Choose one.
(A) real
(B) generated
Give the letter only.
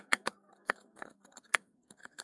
B